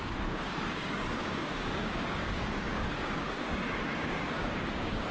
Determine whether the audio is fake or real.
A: fake